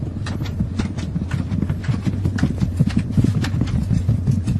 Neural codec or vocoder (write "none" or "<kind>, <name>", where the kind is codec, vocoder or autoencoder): none